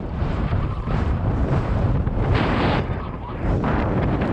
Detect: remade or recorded remade